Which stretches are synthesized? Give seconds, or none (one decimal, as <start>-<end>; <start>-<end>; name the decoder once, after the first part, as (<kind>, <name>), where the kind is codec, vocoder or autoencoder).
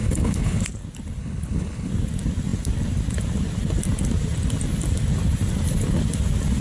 0.0-0.6 (codec, HILCodec); 1.2-1.9